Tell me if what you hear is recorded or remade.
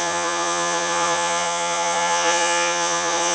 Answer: remade